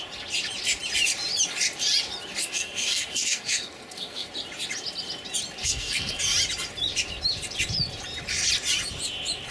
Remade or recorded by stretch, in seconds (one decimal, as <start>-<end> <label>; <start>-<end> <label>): 0.0-2.4 recorded; 2.4-4.3 remade; 4.3-5.6 recorded; 5.6-6.2 remade; 6.2-9.5 recorded